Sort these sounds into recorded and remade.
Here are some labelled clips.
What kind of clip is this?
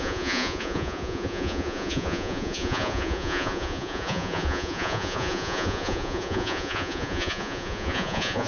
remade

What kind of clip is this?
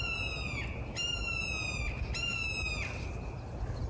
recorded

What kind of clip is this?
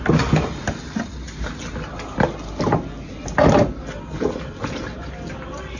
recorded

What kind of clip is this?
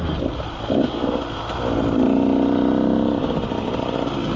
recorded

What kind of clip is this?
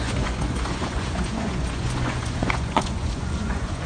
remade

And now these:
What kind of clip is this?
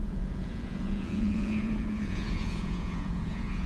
remade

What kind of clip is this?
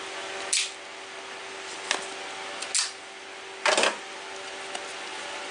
recorded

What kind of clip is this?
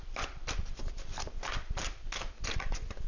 recorded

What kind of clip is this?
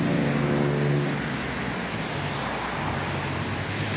recorded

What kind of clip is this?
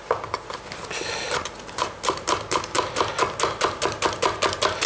recorded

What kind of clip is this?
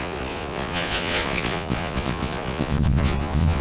remade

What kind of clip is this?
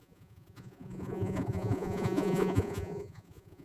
remade